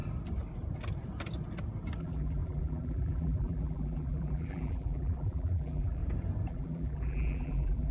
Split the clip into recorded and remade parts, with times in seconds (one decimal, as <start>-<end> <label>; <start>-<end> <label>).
0.0-2.0 recorded; 2.0-6.0 remade; 6.0-6.5 recorded; 6.5-7.9 remade